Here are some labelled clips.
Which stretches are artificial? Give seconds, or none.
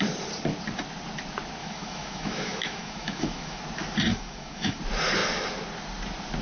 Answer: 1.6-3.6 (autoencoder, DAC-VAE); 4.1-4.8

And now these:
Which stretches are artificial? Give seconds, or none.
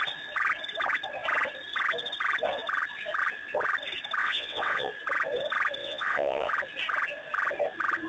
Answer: 4.2-4.9 (vocoder, WaveNeXt); 5.8-6.5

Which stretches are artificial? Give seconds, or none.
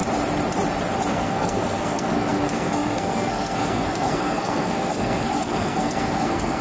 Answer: 1.1-6.6 (codec, SNAC)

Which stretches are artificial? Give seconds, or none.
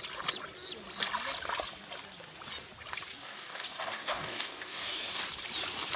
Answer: 3.2-5.2 (codec, DAC)